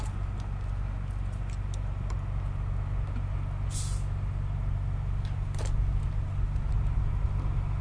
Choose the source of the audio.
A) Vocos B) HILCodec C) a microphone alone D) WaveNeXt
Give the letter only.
C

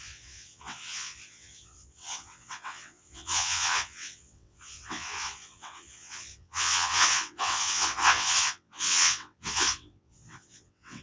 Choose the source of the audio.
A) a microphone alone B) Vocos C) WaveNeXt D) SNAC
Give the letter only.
C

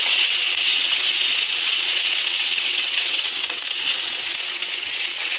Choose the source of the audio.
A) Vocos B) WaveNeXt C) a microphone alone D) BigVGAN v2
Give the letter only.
B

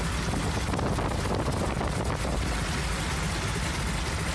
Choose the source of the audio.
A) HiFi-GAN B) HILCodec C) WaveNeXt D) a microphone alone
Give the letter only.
D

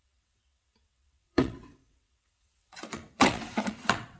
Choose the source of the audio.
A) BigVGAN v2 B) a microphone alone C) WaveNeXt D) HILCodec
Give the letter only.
C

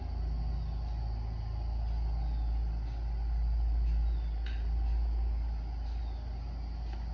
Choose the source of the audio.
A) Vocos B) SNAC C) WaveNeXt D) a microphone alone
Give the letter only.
D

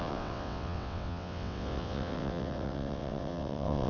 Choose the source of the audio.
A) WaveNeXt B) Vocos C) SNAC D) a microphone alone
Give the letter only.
A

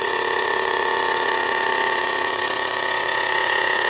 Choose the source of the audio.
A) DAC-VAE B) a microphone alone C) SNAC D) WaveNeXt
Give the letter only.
D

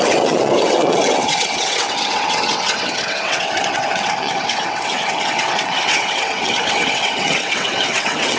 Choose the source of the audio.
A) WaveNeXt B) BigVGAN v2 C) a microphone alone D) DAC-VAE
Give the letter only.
A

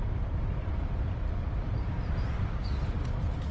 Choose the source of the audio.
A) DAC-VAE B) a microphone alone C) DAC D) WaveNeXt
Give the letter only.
B